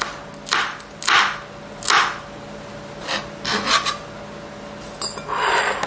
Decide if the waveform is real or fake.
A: real